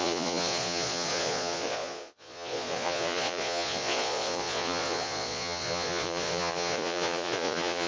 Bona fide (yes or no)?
no